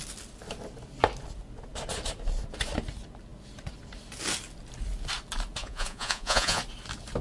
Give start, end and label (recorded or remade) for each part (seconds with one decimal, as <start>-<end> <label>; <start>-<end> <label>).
0.0-5.6 recorded; 5.6-6.6 remade; 6.6-7.2 recorded